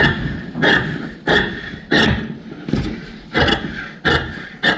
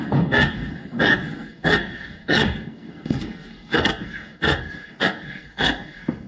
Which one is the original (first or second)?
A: first